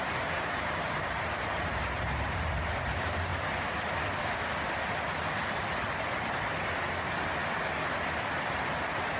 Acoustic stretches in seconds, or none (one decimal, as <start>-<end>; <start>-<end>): 3.3-7.8